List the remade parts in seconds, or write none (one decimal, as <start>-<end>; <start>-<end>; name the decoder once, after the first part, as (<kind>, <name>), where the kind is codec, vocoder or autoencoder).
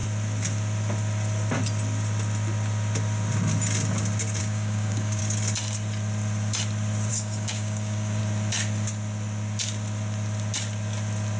4.4-5.2 (codec, DAC); 7.1-8.2